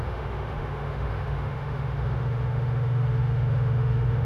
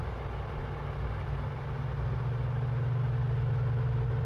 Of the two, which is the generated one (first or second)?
first